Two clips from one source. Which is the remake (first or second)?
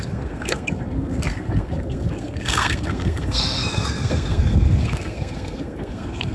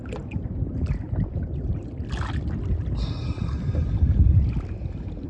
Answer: first